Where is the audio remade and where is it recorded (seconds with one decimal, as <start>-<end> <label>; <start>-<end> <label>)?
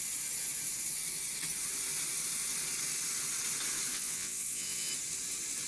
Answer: 0.0-3.9 recorded; 3.9-4.9 remade; 4.9-5.7 recorded